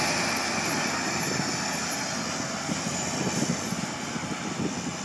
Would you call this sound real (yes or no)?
yes